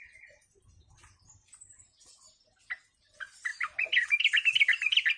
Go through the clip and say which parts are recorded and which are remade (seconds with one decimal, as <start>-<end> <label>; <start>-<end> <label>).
0.0-5.2 recorded